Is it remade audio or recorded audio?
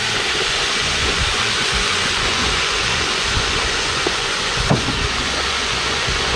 remade